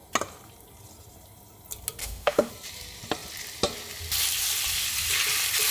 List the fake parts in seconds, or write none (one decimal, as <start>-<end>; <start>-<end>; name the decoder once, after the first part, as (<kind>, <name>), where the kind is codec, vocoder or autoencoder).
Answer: 2.0-2.5 (autoencoder, DAC-VAE)

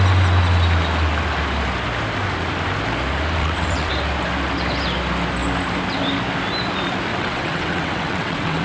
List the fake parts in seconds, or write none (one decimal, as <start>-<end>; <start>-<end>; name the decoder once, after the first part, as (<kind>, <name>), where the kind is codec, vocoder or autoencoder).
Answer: 3.4-3.9 (vocoder, WaveNeXt); 7.1-8.6

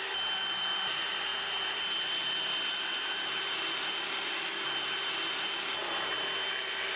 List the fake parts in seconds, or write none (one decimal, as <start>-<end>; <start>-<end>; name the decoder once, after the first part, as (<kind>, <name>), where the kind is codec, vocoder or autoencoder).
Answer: none

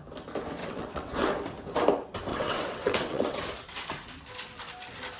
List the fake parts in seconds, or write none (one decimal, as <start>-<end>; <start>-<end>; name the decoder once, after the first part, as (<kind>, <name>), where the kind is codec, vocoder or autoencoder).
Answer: 0.6-1.3 (vocoder, WaveNeXt); 2.3-3.4